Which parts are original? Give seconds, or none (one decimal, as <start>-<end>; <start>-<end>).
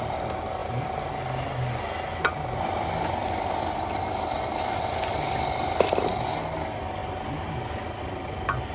0.0-8.7